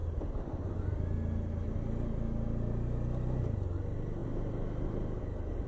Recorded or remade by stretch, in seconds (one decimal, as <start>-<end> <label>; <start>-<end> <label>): 0.0-5.7 recorded